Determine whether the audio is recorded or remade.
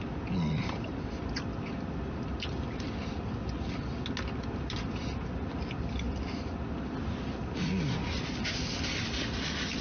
recorded